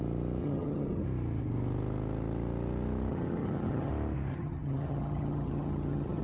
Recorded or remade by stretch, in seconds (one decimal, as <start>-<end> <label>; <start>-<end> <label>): 0.0-0.4 recorded; 0.4-1.0 remade; 1.0-3.1 recorded; 3.1-3.9 remade; 3.9-4.3 recorded; 4.3-6.2 remade